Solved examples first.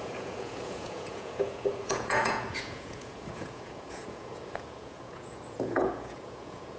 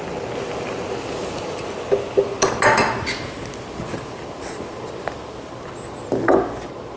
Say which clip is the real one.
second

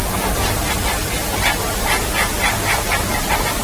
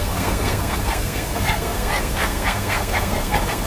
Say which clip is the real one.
first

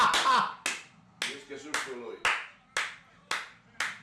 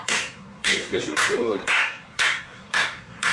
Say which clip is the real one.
first